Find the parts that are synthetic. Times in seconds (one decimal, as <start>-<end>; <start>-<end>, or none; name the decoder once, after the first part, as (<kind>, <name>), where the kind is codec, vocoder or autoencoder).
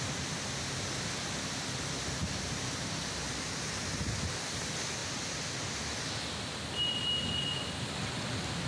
none